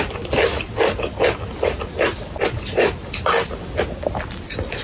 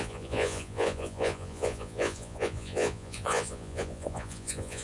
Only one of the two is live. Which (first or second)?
first